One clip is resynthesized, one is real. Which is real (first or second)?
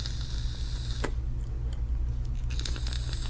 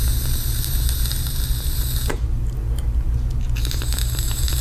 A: first